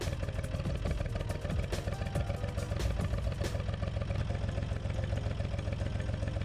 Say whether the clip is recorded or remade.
recorded